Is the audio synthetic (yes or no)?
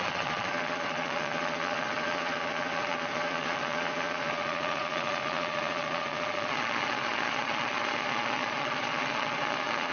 yes